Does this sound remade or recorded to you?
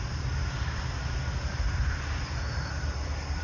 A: recorded